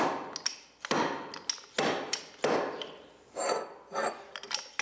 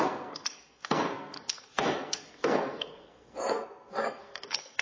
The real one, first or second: first